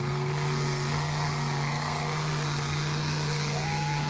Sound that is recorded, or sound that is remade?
remade